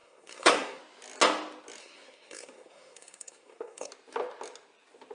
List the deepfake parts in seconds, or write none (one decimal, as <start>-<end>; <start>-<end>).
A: 0.0-0.8; 1.8-3.9